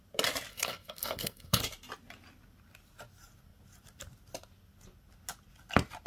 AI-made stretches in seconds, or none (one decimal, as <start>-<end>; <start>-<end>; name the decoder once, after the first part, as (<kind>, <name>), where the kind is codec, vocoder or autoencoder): 0.5-1.6 (codec, SNAC)

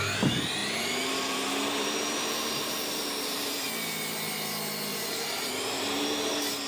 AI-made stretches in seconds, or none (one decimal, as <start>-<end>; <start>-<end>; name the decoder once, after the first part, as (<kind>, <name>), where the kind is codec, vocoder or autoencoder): 0.6-3.7 (vocoder, BigVGAN v2); 4.9-6.3

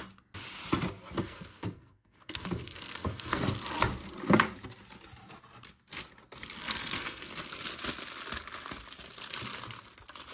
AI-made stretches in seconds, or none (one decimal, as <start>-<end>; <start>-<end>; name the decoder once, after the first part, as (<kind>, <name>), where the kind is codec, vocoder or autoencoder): 1.2-3.4 (codec, SNAC); 6.6-7.3

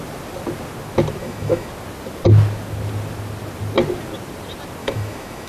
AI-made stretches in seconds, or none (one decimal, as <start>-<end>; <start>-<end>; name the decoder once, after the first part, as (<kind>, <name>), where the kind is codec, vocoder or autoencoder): 1.2-1.7 (autoencoder, DAC-VAE); 4.8-5.5

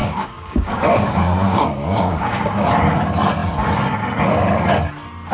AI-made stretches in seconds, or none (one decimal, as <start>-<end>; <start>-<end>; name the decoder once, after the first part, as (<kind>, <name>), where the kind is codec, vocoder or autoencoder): 0.0-1.1 (codec, DAC); 1.5-2.7

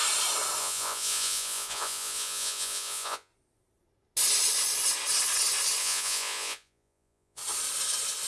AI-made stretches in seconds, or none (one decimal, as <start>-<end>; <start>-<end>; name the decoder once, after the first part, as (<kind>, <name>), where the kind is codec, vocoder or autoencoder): 0.6-3.3 (vocoder, Vocos); 5.8-7.4

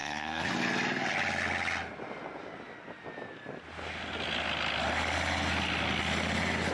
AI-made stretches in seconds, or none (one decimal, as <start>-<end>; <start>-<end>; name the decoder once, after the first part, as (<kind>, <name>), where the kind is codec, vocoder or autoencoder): 0.0-0.5 (codec, SNAC)